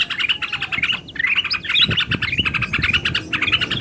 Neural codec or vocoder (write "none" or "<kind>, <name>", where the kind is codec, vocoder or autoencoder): none